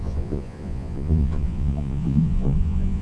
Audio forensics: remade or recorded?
remade